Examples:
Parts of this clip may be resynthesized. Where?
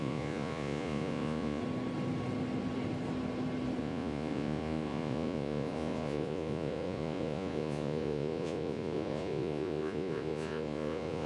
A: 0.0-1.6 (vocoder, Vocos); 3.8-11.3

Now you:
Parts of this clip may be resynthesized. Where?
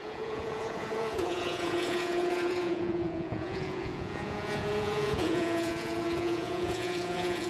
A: 0.0-7.5 (vocoder, Vocos)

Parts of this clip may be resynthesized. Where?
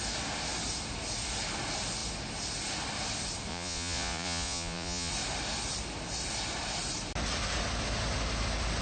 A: 3.5-5.1 (vocoder, Vocos)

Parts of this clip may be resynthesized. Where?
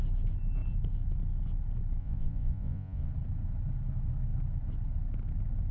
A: 2.0-3.1 (vocoder, Vocos)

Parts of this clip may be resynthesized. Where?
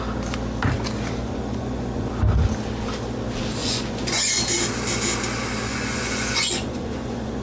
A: 1.2-2.1 (vocoder, Vocos); 3.6-4.4; 5.7-7.4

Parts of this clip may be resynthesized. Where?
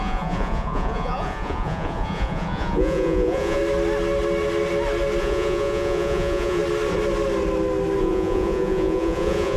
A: 0.0-3.6 (vocoder, Vocos); 5.2-6.6; 8.0-9.6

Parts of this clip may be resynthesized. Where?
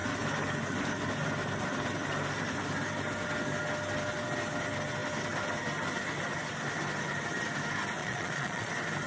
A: 8.0-8.7 (vocoder, Vocos)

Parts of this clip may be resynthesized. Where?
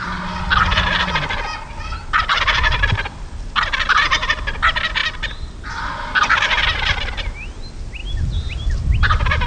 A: none